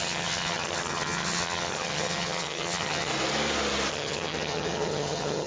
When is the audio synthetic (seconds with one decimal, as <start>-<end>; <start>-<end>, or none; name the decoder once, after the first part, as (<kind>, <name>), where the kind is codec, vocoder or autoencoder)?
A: 0.0-3.1 (vocoder, HiFi-GAN); 3.9-5.5